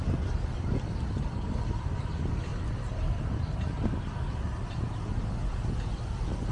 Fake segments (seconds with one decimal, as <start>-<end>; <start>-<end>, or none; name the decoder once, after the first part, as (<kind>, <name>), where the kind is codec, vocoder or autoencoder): 2.5-3.4 (vocoder, BigVGAN v2)